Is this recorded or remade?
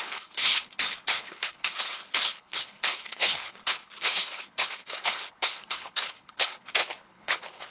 remade